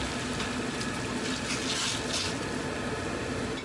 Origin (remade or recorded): recorded